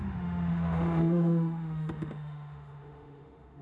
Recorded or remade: remade